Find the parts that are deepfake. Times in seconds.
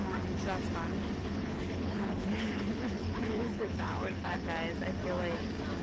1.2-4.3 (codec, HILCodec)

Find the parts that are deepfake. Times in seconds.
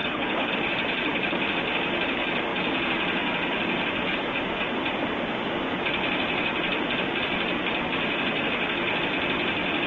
0.0-0.5 (codec, HILCodec)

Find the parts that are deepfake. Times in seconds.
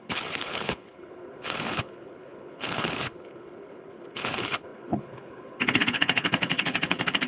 0.0-7.3 (codec, HILCodec)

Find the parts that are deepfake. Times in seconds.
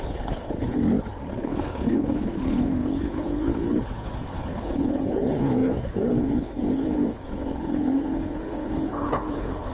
0.0-0.8 (codec, HILCodec); 1.4-9.7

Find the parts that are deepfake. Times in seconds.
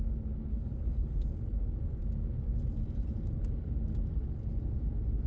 0.5-1.2 (codec, HILCodec)